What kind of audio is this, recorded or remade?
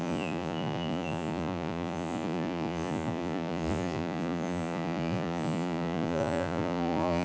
remade